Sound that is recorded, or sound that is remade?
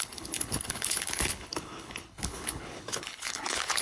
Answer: remade